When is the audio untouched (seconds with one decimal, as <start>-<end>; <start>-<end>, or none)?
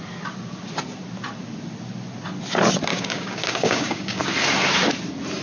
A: 0.0-2.9; 4.2-5.4